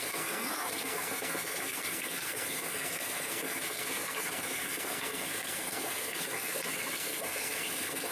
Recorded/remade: remade